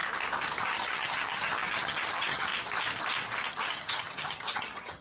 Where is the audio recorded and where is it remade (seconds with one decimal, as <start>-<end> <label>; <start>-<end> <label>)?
0.0-0.6 recorded; 0.6-2.5 remade; 2.5-3.5 recorded; 3.5-5.0 remade